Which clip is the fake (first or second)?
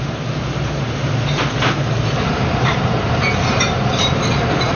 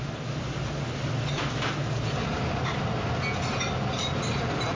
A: first